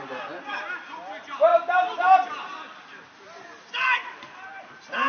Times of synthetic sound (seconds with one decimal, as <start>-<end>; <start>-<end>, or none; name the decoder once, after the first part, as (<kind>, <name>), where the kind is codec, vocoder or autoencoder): none